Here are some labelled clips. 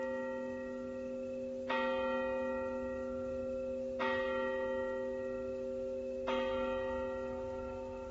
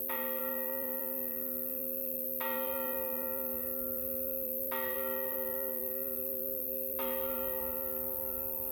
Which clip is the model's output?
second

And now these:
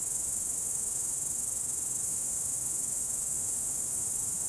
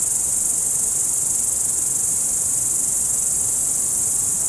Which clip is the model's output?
first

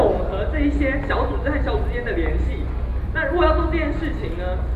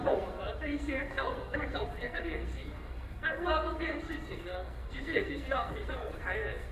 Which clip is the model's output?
second